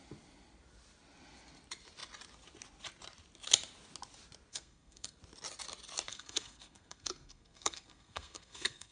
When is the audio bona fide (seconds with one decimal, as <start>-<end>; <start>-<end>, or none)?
0.0-4.5; 5.2-6.1